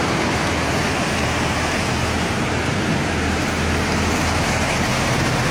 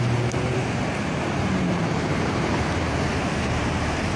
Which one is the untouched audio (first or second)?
first